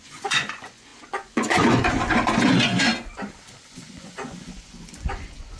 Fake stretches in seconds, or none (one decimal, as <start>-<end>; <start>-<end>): 0.0-2.9; 3.7-5.6